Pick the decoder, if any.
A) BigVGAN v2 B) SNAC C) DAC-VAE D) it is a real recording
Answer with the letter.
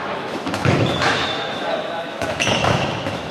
C